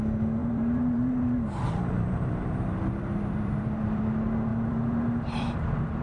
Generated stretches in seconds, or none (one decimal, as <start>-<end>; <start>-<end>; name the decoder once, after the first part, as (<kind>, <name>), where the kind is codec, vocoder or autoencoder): 0.4-4.0 (vocoder, BigVGAN v2); 4.5-6.0